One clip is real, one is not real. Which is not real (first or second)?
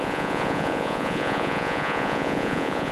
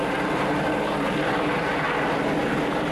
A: first